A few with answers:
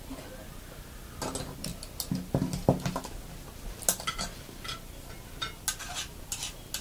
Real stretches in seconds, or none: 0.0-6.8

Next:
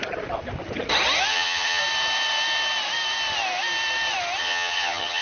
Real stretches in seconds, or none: 0.0-1.3; 1.8-4.4

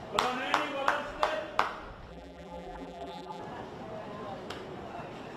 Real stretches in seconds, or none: 0.0-2.1; 3.4-5.4

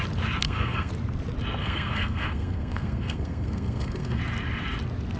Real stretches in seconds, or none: 0.0-0.4; 0.9-1.6; 4.2-5.2

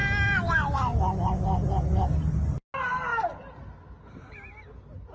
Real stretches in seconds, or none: 0.0-5.1